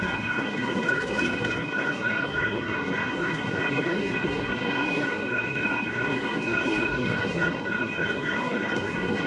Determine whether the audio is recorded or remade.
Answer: remade